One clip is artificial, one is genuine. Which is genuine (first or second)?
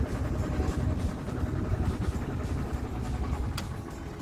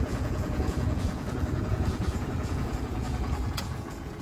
first